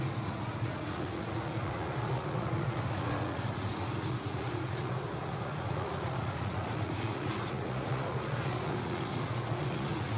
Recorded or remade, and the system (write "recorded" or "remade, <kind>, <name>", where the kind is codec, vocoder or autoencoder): remade, vocoder, Vocos